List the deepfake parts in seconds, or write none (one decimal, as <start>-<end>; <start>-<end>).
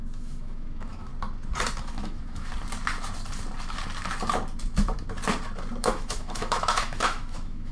0.0-1.1; 1.8-2.5; 5.8-7.7